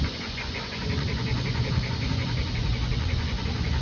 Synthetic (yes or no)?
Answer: yes